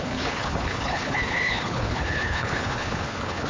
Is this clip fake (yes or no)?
yes